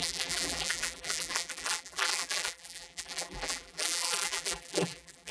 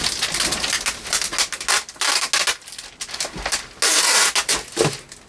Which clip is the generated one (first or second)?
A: first